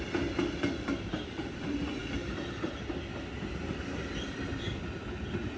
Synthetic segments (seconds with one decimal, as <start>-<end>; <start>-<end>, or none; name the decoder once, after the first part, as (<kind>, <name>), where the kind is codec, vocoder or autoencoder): none